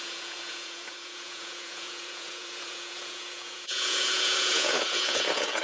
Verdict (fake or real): fake